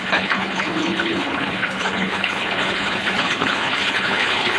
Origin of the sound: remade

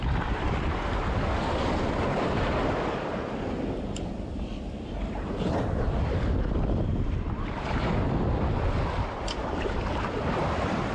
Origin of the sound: remade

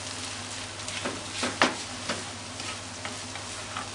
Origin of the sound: recorded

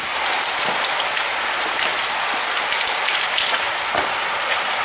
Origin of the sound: recorded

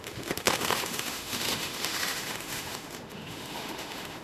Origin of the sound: remade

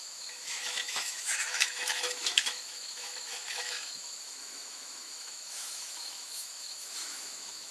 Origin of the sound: remade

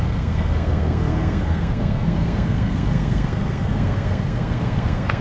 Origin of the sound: remade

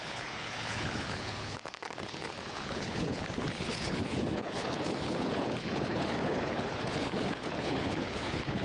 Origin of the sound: remade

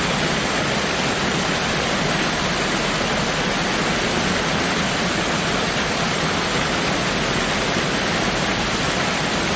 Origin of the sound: recorded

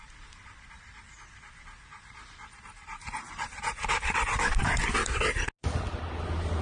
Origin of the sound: recorded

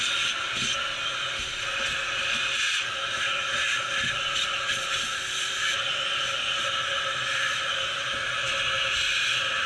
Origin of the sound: recorded